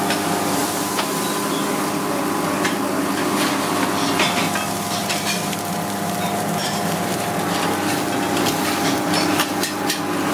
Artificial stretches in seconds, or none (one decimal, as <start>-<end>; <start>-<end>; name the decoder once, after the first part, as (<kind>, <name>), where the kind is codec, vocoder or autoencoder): 0.6-1.1 (vocoder, BigVGAN v2); 5.0-7.2